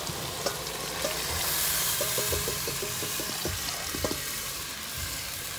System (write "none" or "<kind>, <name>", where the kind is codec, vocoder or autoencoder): vocoder, BigVGAN v2